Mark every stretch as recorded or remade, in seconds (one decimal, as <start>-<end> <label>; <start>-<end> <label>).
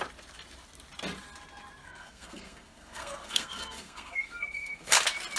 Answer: 0.0-1.8 recorded; 1.8-5.0 remade; 5.0-5.4 recorded